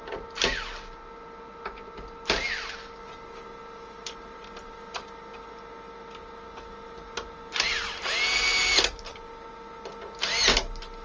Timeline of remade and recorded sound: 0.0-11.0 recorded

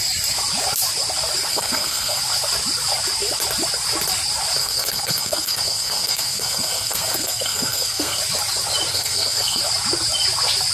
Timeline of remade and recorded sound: 0.0-1.5 recorded; 1.5-2.2 remade; 2.2-4.6 recorded; 4.6-8.2 remade; 8.2-8.9 recorded; 8.9-9.6 remade; 9.6-10.7 recorded

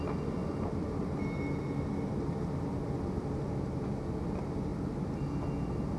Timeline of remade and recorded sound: 0.0-6.0 recorded

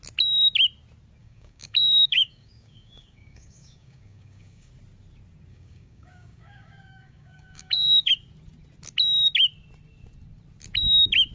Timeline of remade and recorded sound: 0.0-1.2 recorded; 1.2-4.7 remade; 4.7-5.5 recorded; 5.5-8.1 remade; 8.1-11.3 recorded

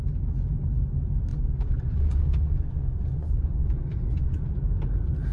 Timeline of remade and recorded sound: 0.0-1.3 recorded; 1.3-4.5 remade; 4.5-5.3 recorded

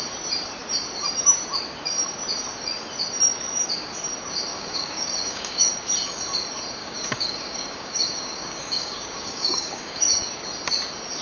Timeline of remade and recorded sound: 0.0-4.5 recorded; 4.5-5.7 remade; 5.7-6.8 recorded; 6.8-10.3 remade; 10.3-11.2 recorded

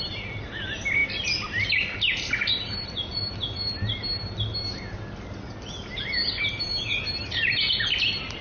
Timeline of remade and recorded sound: 0.0-8.4 recorded